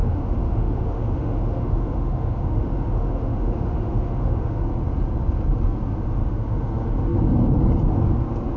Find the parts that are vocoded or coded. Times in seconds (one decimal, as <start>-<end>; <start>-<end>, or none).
0.0-4.6; 6.2-6.7